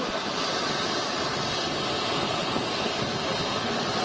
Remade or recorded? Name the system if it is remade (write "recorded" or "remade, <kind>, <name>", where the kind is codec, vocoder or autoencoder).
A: recorded